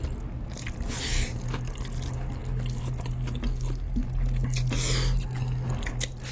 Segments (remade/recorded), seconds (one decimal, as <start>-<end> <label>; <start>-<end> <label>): 0.0-6.3 recorded